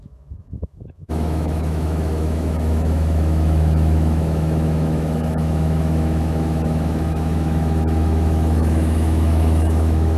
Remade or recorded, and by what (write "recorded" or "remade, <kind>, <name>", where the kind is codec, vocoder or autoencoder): remade, autoencoder, DAC-VAE